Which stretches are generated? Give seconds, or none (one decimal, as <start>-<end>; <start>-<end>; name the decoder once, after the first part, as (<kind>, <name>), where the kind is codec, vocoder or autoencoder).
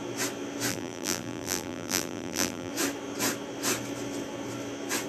0.7-2.7 (vocoder, BigVGAN v2)